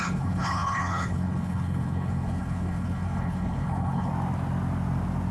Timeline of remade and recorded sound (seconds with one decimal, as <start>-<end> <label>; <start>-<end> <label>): 0.0-4.1 remade; 4.1-5.3 recorded